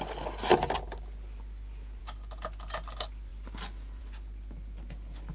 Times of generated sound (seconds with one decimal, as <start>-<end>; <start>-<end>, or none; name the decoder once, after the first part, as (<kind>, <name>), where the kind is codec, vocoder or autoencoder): none